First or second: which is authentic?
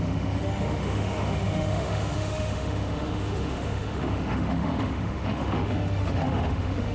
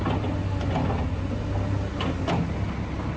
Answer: second